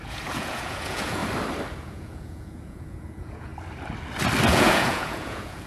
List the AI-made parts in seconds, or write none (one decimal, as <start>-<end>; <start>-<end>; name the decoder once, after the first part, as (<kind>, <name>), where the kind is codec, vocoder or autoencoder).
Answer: 0.0-1.2 (vocoder, Vocos); 1.8-3.5; 4.5-5.7